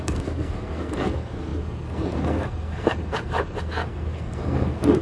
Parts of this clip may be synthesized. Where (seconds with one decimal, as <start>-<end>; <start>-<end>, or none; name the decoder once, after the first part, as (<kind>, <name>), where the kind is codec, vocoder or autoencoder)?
0.0-5.0 (codec, SNAC)